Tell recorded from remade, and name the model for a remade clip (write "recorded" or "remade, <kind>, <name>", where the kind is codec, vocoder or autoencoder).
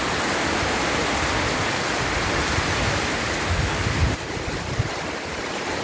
recorded